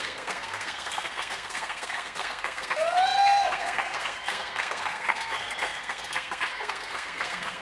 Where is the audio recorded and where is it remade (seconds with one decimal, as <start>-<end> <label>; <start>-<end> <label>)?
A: 0.0-7.6 remade